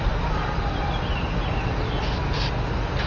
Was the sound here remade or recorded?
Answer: recorded